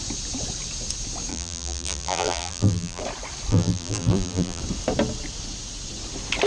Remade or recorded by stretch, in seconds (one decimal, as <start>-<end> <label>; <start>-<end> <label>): 0.0-1.3 recorded; 1.3-3.0 remade; 3.0-3.5 recorded; 3.5-4.6 remade; 4.6-6.5 recorded

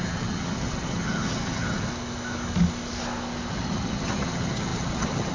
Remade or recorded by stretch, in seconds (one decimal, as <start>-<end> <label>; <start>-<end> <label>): 0.0-1.9 remade; 1.9-3.5 recorded; 3.5-5.3 remade

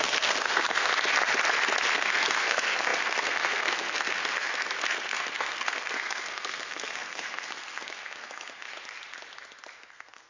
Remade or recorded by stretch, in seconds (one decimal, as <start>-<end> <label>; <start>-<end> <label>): 0.0-0.9 remade; 0.9-1.9 recorded; 1.9-8.7 remade; 8.7-9.9 recorded; 9.9-10.3 remade

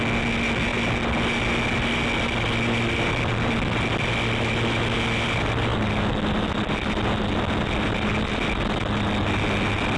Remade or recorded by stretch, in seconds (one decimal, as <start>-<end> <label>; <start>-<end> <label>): 0.0-10.0 recorded

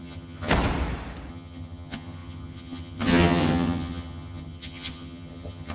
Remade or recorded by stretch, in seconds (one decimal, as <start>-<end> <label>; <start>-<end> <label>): 0.0-0.5 remade; 0.5-1.3 recorded; 1.3-5.7 remade

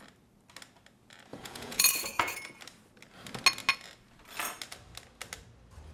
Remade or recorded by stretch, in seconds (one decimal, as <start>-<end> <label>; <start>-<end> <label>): 0.0-1.3 recorded; 1.3-2.6 remade; 2.6-5.9 recorded

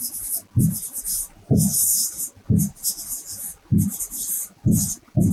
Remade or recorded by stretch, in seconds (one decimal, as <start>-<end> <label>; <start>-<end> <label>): 0.0-1.9 remade; 1.9-4.0 recorded; 4.0-5.3 remade

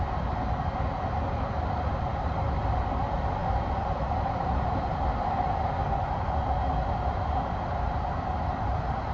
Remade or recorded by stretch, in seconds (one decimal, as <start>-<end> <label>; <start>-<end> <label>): 0.0-9.1 recorded